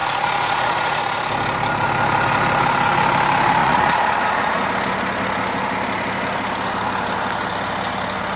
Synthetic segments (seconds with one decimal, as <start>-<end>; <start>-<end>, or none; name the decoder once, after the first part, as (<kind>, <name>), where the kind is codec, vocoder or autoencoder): 0.0-1.0 (vocoder, Vocos); 3.6-4.7